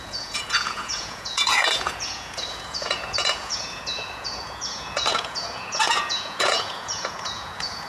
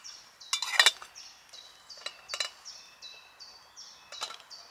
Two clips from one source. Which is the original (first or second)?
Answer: second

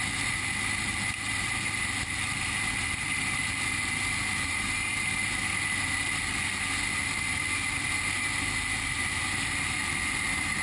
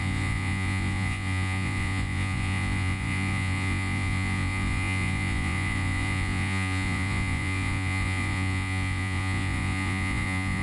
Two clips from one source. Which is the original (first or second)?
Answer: first